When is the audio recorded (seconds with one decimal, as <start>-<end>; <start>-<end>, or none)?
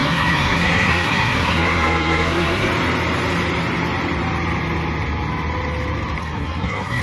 2.7-6.2